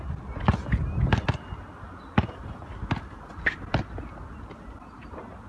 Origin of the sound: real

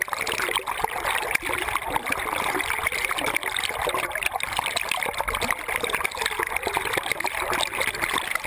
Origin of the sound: real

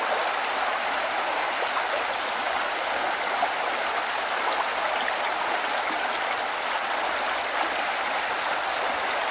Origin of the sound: real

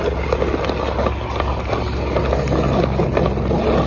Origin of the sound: real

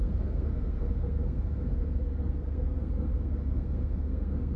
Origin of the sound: fake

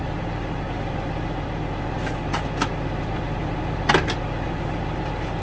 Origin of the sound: real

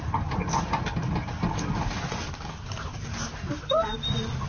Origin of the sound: real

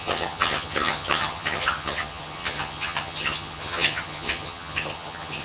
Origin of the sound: fake